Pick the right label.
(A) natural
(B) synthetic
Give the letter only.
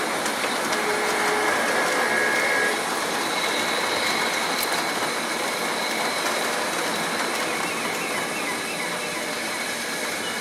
A